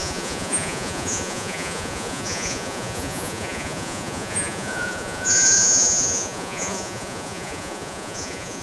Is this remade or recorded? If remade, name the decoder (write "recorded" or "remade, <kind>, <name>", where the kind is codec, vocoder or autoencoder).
remade, vocoder, Vocos